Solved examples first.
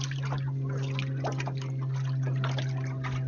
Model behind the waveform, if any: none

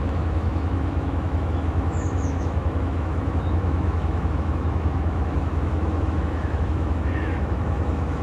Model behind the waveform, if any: autoencoder, DAC-VAE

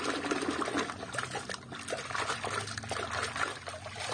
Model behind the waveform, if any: none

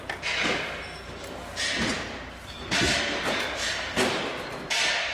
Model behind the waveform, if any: none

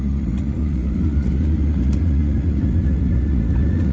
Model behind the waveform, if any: vocoder, Vocos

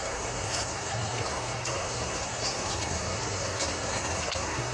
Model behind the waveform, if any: codec, SNAC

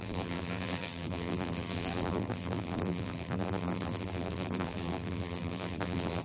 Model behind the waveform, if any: vocoder, BigVGAN v2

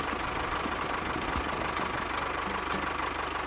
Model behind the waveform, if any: none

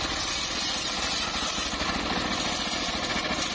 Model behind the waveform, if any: none